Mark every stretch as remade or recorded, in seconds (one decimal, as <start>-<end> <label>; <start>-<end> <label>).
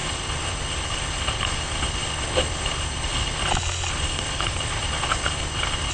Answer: 0.0-3.5 remade; 3.5-3.9 recorded; 3.9-5.9 remade